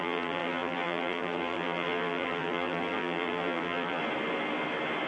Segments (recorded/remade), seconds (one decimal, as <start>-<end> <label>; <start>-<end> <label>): 0.0-4.0 remade; 4.0-5.1 recorded